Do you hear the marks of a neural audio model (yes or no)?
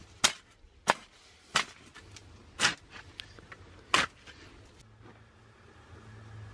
no